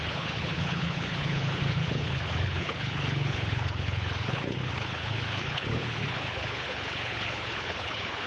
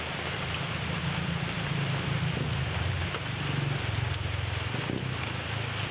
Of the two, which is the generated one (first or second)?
first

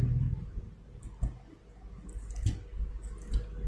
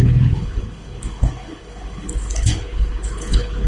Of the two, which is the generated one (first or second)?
second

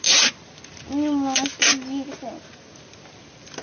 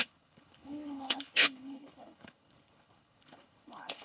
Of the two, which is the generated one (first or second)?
second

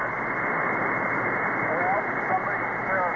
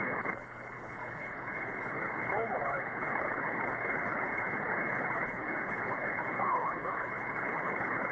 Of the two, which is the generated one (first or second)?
second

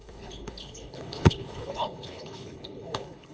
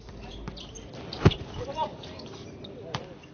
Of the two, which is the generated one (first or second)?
first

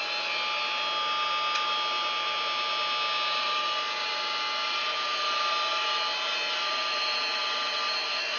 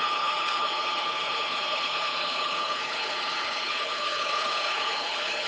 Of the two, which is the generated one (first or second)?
second